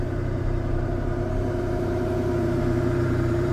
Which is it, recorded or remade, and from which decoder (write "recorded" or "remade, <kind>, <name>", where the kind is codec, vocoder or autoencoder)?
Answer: remade, vocoder, BigVGAN v2